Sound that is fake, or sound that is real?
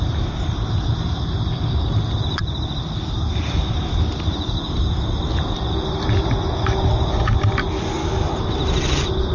real